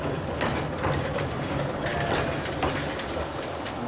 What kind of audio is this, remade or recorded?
recorded